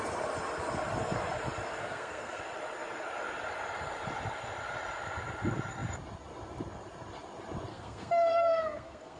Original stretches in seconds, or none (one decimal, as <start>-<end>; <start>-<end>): 0.0-1.8; 2.4-7.7